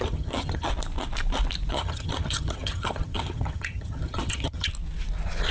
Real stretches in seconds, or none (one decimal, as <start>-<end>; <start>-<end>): 0.7-1.7; 4.7-5.5